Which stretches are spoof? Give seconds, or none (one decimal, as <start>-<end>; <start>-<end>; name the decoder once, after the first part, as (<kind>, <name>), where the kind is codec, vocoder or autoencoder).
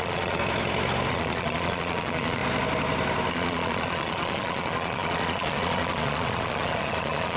0.0-0.4 (vocoder, Vocos); 1.1-2.4; 3.3-7.4